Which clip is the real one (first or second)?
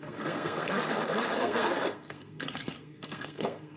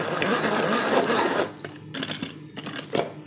second